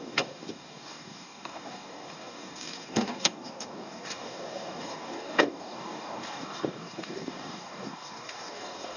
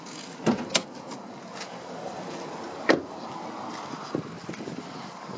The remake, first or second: first